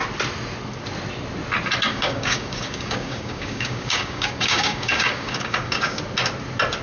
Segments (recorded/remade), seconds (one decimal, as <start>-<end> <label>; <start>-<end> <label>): 0.0-1.9 recorded; 1.9-6.0 remade; 6.0-6.8 recorded